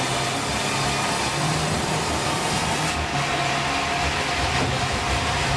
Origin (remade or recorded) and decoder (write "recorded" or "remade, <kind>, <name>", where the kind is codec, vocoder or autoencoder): recorded